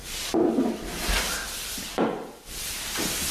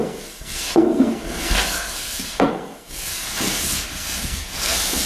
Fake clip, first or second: second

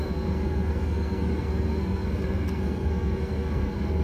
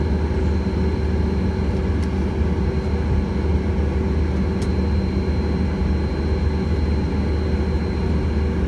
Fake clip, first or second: first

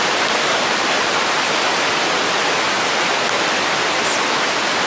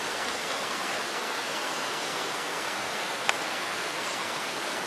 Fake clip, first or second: second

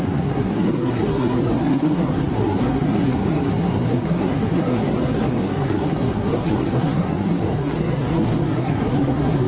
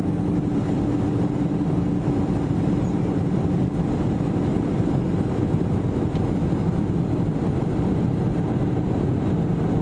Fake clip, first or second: first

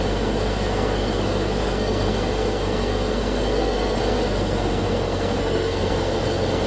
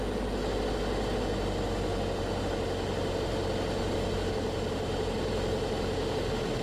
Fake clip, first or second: first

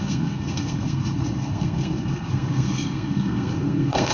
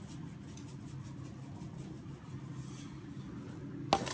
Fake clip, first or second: first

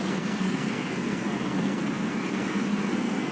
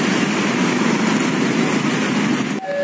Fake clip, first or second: first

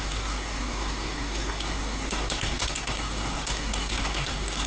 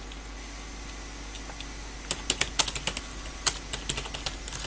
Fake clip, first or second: first